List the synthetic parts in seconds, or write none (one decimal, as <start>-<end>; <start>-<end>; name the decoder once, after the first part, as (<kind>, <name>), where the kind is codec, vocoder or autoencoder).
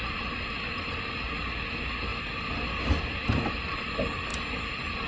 none